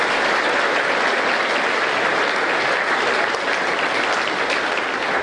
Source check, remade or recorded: recorded